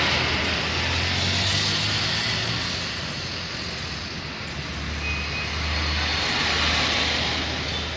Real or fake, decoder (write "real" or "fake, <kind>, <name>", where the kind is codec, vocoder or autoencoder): real